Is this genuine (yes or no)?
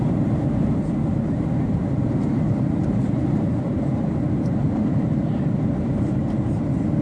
no